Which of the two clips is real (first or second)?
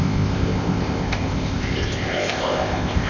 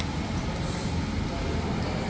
second